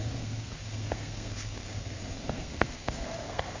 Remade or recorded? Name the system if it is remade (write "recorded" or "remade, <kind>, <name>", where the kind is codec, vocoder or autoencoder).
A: remade, codec, SNAC